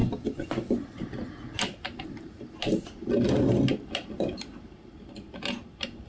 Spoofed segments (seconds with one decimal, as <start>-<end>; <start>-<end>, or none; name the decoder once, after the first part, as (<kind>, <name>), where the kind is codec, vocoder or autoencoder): none